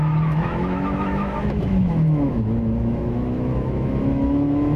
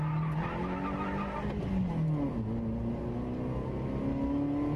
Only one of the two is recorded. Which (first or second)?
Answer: second